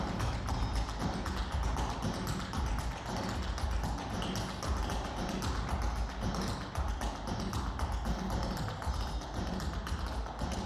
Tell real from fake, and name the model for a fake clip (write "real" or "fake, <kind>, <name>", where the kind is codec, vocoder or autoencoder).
real